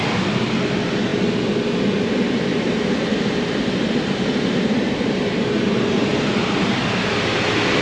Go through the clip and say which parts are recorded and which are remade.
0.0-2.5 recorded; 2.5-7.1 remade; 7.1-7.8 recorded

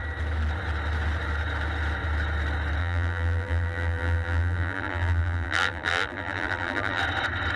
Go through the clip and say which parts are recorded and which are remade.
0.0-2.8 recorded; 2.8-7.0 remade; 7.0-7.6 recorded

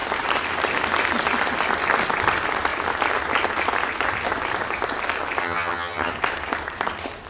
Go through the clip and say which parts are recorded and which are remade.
0.0-5.4 recorded; 5.4-6.1 remade; 6.1-7.3 recorded

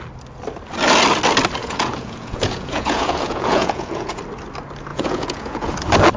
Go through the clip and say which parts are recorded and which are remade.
0.0-1.6 recorded; 1.6-4.2 remade; 4.2-4.9 recorded; 4.9-5.7 remade; 5.7-6.2 recorded

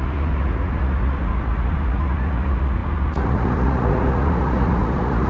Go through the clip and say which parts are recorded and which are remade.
0.0-5.3 remade

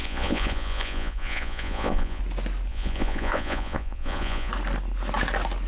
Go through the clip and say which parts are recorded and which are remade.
0.0-2.2 remade; 2.2-2.7 recorded; 2.7-4.5 remade; 4.5-5.7 recorded